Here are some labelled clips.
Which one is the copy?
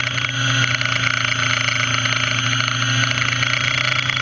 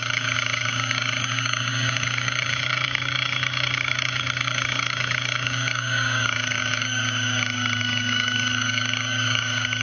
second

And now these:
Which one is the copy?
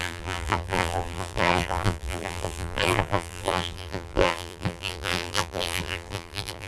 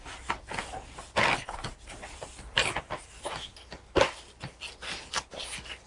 first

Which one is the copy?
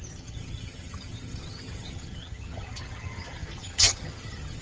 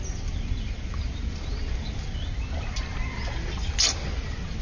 first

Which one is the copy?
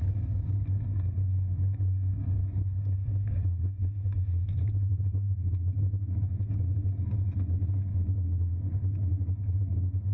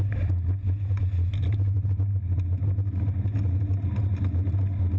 first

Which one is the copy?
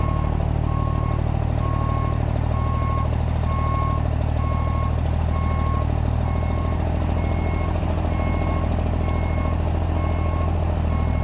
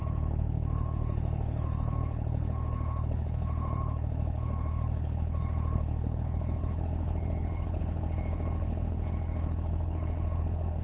second